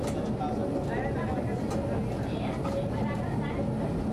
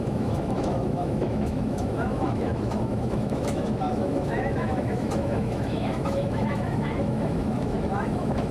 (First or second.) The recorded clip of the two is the first